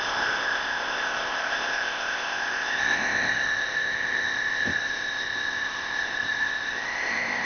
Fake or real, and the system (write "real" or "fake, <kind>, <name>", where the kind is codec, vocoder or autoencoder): fake, codec, ZipCodec